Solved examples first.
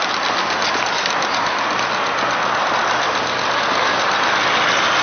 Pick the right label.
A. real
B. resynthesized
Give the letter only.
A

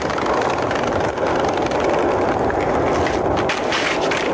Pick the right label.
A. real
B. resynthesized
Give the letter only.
A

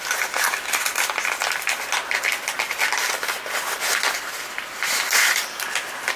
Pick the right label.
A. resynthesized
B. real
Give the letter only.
B